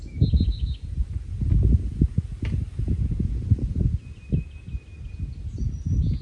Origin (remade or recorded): recorded